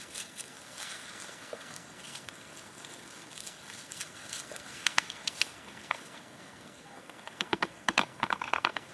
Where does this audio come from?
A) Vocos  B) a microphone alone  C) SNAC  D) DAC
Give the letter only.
C